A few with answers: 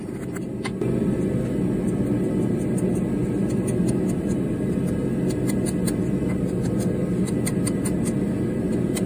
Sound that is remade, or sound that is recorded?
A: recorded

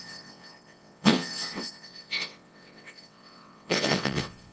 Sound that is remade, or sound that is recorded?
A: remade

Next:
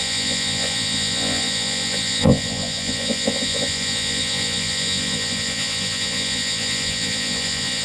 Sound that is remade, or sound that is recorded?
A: remade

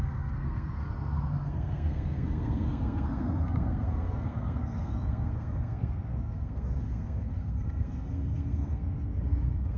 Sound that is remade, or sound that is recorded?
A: remade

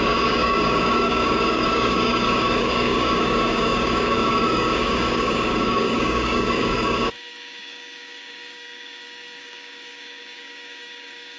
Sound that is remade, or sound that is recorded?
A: remade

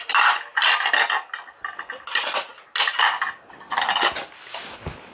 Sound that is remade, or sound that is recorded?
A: recorded